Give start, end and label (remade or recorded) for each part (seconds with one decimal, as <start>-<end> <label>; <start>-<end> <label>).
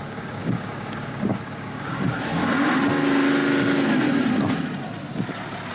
0.0-2.1 remade; 2.1-5.7 recorded